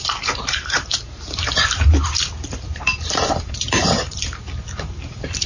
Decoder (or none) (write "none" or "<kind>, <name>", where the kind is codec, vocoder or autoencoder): vocoder, BigVGAN v2